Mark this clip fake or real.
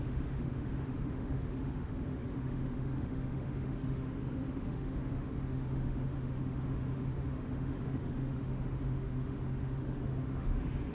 fake